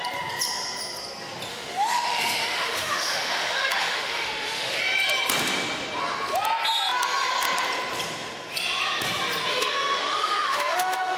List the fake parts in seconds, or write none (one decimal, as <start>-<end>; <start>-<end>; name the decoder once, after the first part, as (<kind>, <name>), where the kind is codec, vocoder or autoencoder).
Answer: 1.5-4.8 (autoencoder, DAC-VAE); 9.5-11.2